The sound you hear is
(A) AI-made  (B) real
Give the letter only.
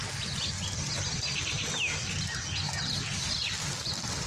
B